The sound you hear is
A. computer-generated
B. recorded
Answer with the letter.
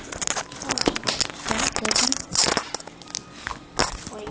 B